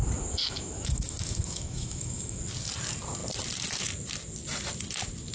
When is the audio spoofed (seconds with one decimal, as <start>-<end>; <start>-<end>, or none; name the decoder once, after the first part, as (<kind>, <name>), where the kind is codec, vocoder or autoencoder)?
0.4-2.4 (autoencoder, DAC-VAE)

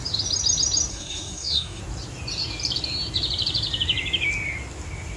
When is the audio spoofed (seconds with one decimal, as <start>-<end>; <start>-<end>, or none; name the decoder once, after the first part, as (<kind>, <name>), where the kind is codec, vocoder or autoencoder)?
0.9-1.8 (codec, SNAC)

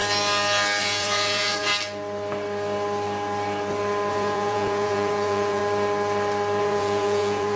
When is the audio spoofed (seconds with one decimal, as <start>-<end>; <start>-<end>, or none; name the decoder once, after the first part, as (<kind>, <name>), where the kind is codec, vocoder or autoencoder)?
0.8-1.7 (vocoder, Vocos); 4.1-5.6; 6.6-7.6

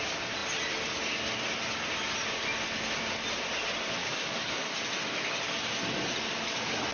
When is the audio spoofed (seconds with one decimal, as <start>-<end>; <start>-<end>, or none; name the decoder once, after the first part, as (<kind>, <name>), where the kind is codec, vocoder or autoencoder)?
4.0-4.7 (codec, DAC)

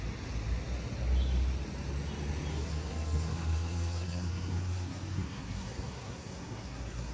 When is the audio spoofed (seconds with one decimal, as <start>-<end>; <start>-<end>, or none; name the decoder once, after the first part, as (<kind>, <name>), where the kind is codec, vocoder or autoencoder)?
2.5-7.1 (codec, SNAC)

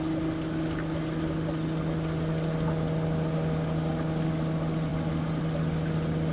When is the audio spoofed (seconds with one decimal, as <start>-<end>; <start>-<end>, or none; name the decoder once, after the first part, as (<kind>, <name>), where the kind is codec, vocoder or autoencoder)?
none

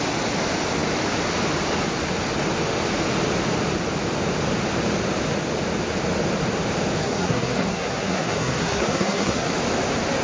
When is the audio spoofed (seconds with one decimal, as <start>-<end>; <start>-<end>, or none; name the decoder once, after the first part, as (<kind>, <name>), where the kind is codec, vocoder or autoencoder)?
7.0-9.5 (codec, SNAC)